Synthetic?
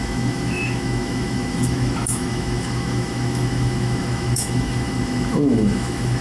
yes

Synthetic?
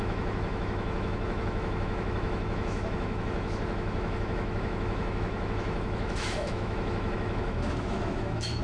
yes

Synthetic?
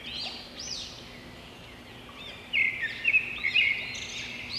no